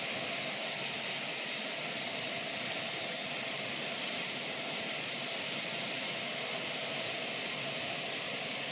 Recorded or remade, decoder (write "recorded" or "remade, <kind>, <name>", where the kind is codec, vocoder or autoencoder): recorded